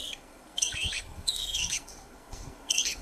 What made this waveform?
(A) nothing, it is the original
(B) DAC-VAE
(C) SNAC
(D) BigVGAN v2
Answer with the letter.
C